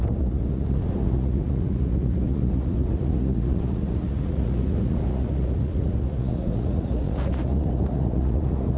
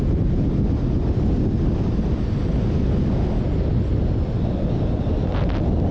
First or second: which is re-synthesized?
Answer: first